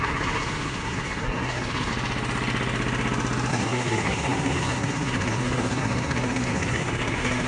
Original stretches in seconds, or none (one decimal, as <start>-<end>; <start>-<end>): 1.9-3.5